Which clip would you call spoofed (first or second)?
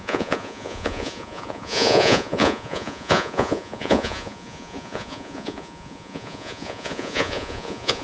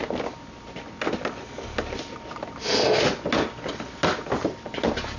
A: first